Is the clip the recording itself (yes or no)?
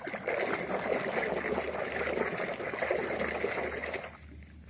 yes